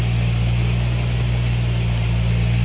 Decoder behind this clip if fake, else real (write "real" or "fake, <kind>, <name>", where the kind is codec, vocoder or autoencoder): real